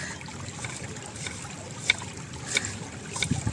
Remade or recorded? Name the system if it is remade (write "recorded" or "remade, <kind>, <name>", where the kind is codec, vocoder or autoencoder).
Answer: recorded